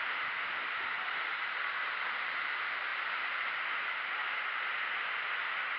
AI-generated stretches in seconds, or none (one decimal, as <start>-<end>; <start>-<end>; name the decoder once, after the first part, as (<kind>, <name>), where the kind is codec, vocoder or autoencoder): 0.9-2.3 (vocoder, BigVGAN v2); 2.9-3.7